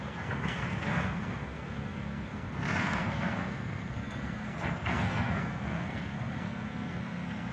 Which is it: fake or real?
fake